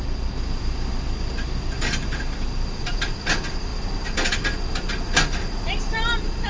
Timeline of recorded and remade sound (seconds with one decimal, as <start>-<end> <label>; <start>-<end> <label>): 0.0-6.5 recorded